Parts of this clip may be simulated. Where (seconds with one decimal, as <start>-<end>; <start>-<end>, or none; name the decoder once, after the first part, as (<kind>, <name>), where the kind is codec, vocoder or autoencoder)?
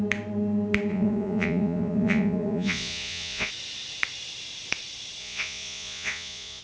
0.9-3.5 (vocoder, Vocos); 5.2-6.6